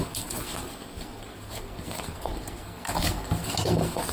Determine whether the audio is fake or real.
fake